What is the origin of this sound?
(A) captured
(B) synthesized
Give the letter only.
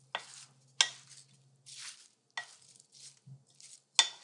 A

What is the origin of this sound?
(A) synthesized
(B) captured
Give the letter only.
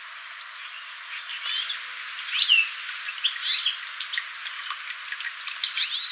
B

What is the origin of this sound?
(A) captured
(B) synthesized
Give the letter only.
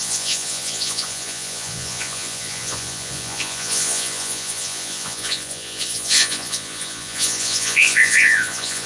B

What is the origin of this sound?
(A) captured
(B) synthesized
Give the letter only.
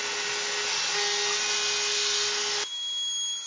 A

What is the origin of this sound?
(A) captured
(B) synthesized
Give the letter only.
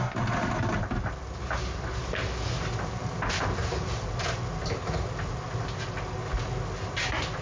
A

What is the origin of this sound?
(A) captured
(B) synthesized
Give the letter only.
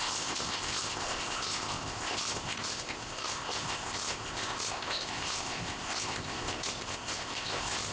B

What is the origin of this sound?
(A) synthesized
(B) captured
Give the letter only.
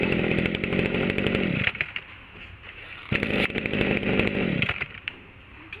A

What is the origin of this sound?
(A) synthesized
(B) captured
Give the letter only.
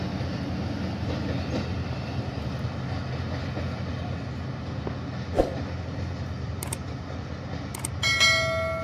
B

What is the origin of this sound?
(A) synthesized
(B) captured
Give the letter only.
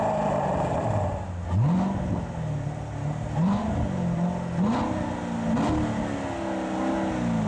B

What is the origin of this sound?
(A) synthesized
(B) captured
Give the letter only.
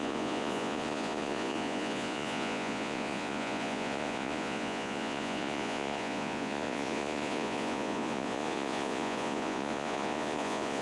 A